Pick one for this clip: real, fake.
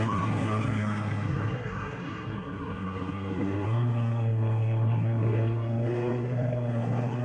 fake